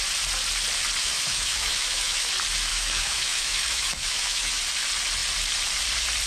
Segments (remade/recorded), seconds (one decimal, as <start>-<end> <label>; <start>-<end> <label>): 0.0-1.0 recorded; 1.0-2.3 remade; 2.3-2.7 recorded; 2.7-4.5 remade; 4.5-6.3 recorded